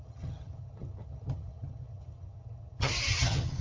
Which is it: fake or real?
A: fake